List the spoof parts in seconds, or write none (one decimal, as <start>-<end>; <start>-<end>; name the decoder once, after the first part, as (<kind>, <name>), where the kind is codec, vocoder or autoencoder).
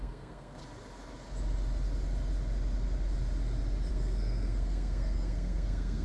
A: 0.0-0.6 (codec, SNAC); 3.9-6.0